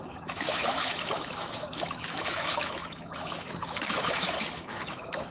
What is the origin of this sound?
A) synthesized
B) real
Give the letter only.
A